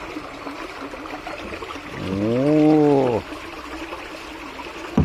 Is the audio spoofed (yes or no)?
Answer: no